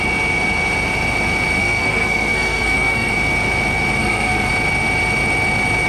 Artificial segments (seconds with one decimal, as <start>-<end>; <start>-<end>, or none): 1.6-3.1; 4.0-4.5